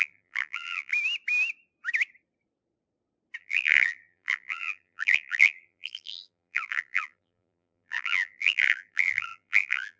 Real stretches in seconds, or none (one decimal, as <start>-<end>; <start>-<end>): 0.9-3.4